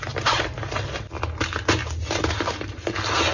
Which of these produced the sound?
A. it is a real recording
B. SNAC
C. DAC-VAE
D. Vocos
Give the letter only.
A